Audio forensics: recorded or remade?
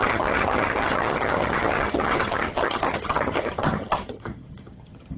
remade